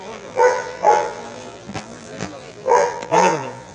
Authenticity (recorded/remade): remade